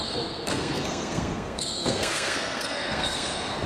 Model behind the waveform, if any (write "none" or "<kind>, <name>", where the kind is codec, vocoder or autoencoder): codec, SNAC